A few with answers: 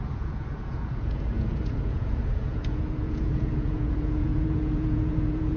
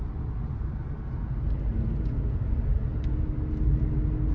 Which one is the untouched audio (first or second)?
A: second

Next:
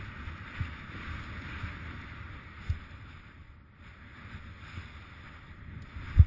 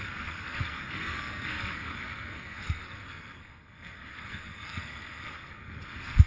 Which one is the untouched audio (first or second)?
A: first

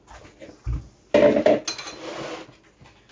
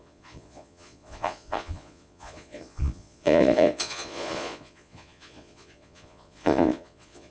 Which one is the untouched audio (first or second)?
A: first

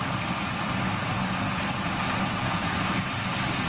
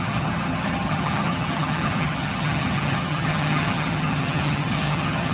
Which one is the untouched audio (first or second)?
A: first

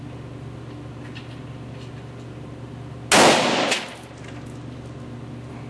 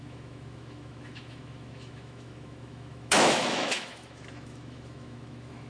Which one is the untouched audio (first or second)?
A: first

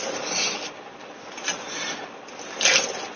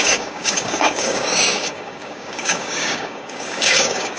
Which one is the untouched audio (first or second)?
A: first